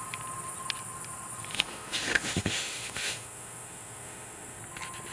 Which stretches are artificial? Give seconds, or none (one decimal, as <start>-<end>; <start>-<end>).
1.5-4.6